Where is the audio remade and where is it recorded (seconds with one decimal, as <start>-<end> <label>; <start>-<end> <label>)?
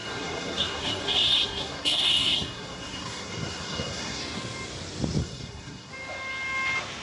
0.0-4.2 remade; 4.2-5.2 recorded; 5.2-5.9 remade; 5.9-7.0 recorded